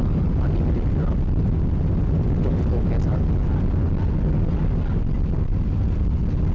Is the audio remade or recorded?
recorded